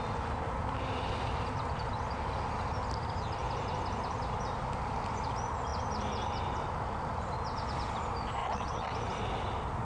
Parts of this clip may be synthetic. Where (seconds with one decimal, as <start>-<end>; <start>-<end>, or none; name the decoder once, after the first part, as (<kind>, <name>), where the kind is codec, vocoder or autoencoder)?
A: 8.4-8.9 (vocoder, WaveNeXt)